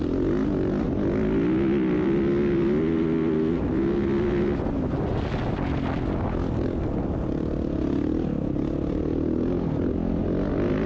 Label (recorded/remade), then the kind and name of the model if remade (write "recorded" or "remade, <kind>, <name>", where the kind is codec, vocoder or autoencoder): recorded